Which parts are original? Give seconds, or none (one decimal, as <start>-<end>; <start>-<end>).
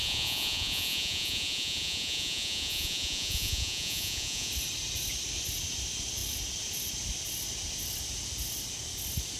4.5-9.4